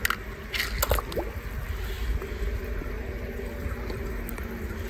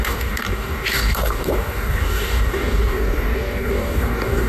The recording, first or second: first